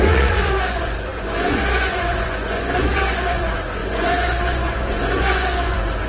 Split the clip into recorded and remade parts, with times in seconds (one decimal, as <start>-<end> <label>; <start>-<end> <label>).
0.0-6.1 remade